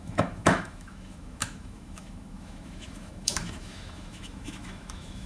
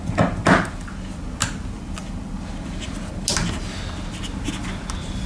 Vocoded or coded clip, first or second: first